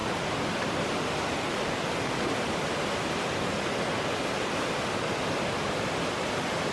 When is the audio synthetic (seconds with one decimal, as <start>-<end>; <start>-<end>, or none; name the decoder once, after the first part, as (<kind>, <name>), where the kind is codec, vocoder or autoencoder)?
none

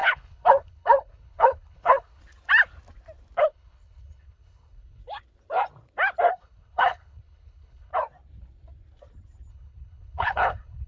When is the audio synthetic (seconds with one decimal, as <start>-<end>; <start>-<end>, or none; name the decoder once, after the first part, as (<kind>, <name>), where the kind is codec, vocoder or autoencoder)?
0.0-2.2 (codec, HILCodec); 3.4-5.0; 6.3-7.9; 9.5-10.9

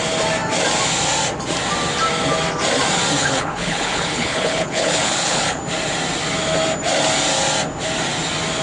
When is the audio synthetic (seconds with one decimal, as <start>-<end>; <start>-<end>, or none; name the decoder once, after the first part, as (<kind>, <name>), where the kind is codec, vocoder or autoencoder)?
3.2-5.6 (codec, HILCodec)

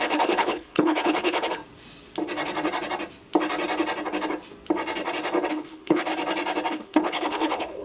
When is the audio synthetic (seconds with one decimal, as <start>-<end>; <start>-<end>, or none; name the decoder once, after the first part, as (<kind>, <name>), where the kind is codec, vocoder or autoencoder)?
0.0-1.6 (codec, HILCodec); 5.5-6.1; 6.7-7.8